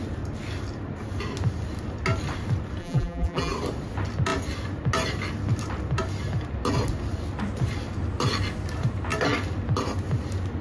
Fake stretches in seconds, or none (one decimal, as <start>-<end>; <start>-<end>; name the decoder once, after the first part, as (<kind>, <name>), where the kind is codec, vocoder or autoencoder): 2.8-3.5 (vocoder, BigVGAN v2)